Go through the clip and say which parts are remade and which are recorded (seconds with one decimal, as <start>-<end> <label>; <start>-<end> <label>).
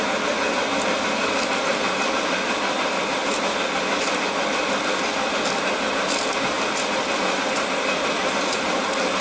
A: 0.0-9.2 recorded